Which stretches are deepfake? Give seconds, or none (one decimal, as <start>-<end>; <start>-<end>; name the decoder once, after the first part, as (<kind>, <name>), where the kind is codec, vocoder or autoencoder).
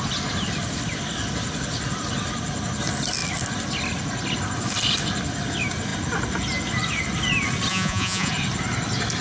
7.7-8.3 (vocoder, Vocos)